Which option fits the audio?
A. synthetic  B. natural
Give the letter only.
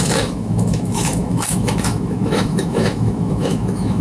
A